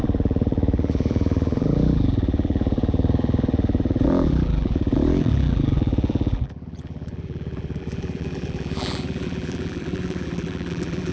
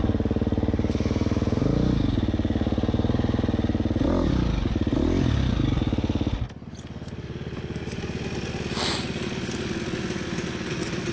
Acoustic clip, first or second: second